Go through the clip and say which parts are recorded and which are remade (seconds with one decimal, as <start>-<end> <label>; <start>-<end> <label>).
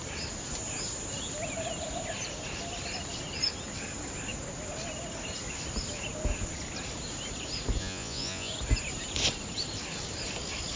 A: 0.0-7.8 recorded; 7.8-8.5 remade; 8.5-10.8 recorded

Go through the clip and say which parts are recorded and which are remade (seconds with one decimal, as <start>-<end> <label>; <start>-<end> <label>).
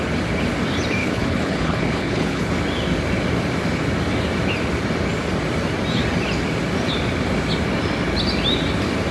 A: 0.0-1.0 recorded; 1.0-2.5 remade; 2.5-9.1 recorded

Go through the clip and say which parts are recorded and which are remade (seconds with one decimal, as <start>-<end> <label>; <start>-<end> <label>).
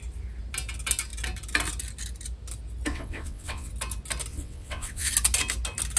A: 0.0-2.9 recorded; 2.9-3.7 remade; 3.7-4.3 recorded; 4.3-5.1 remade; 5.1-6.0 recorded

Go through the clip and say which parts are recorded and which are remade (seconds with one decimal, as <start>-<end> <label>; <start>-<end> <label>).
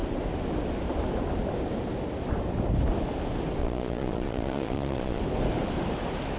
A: 0.0-3.6 recorded; 3.6-5.2 remade; 5.2-6.4 recorded